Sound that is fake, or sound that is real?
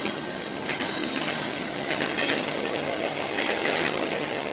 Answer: fake